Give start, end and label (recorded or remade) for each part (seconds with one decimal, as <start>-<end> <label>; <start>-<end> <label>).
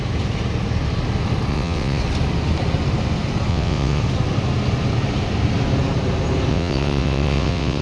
0.0-1.5 recorded; 1.5-2.0 remade; 2.0-3.5 recorded; 3.5-4.0 remade; 4.0-6.5 recorded; 6.5-7.8 remade